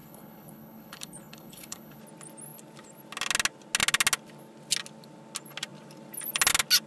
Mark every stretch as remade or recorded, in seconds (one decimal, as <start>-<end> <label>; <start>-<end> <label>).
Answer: 0.0-2.0 remade; 2.0-6.9 recorded